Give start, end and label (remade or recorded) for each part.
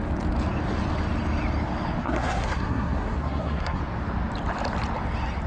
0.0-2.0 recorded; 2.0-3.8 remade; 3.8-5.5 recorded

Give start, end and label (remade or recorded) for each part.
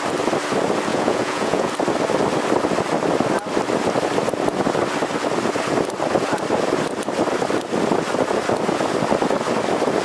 0.0-0.9 recorded; 0.9-1.7 remade; 1.7-10.0 recorded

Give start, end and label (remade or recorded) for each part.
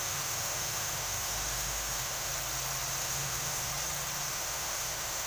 0.0-2.3 remade; 2.3-3.0 recorded; 3.0-3.7 remade; 3.7-4.3 recorded; 4.3-5.3 remade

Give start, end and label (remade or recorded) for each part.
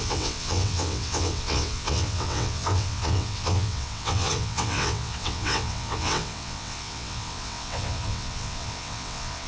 0.0-9.5 remade